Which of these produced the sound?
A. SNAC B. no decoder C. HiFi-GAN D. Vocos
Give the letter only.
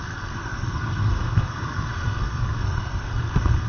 A